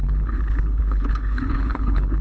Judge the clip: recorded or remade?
remade